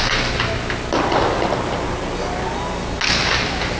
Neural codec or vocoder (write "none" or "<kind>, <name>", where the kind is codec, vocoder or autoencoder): none